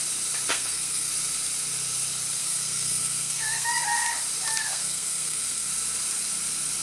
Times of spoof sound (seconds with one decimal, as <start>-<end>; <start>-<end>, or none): 0.5-1.1; 2.4-3.7; 4.6-5.7